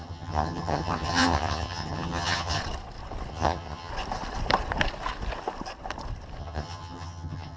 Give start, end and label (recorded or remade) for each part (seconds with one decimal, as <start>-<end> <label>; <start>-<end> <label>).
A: 0.0-2.6 remade; 2.6-3.3 recorded; 3.3-3.9 remade; 3.9-6.4 recorded; 6.4-7.6 remade